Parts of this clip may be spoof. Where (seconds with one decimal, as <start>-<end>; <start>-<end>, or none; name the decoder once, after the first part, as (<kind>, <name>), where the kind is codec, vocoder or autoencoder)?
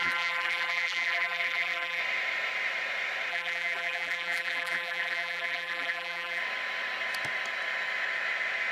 0.0-2.0 (vocoder, BigVGAN v2); 3.3-6.4